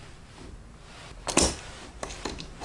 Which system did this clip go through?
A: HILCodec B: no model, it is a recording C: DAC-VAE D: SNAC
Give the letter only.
B